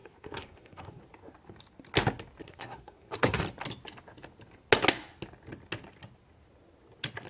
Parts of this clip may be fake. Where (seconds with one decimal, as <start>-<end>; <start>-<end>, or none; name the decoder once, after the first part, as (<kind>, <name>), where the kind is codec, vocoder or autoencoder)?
0.0-1.0 (codec, SNAC); 2.4-3.4